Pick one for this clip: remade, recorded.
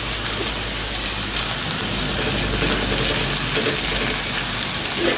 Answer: recorded